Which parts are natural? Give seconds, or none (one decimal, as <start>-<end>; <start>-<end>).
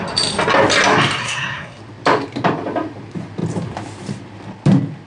0.0-1.2; 1.8-5.1